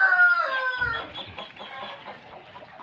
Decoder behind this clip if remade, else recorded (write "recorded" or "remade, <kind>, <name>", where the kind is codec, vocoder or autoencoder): recorded